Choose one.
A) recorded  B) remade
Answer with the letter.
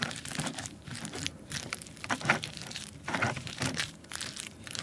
B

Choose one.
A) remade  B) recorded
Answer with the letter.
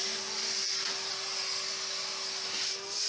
B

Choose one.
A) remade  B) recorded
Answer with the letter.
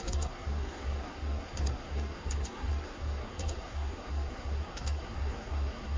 A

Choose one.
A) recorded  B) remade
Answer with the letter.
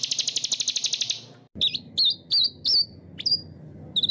A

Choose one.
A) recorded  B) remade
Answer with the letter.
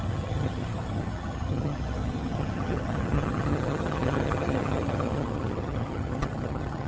B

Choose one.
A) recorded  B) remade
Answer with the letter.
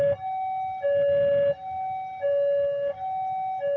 A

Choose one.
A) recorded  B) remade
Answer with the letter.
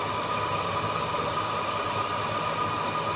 A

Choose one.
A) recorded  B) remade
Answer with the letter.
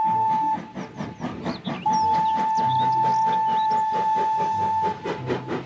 A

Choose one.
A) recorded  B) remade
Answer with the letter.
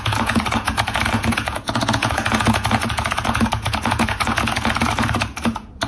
B